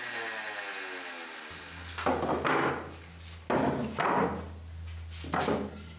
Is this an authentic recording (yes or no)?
yes